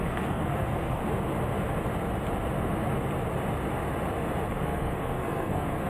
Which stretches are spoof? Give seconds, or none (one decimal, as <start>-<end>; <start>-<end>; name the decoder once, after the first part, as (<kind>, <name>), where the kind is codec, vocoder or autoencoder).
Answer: 0.0-1.0 (codec, SNAC); 4.5-5.9

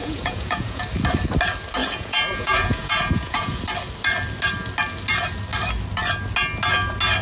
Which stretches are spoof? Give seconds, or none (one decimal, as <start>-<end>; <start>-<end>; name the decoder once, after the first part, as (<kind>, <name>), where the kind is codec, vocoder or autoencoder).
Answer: 0.0-0.8 (vocoder, Vocos); 1.8-3.6